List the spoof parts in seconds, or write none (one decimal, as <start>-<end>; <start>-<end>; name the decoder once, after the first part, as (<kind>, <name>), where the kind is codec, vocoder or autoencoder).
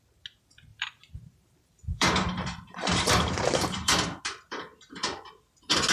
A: 0.7-4.2 (vocoder, BigVGAN v2)